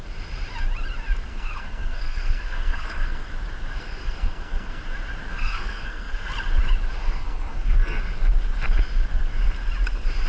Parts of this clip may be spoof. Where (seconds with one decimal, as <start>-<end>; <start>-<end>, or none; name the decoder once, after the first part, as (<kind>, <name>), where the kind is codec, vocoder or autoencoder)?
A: 1.3-3.3 (codec, SNAC); 3.8-4.8; 5.3-6.3; 7.0-8.0